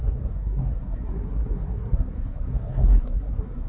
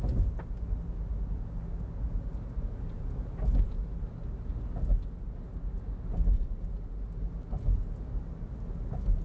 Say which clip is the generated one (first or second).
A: first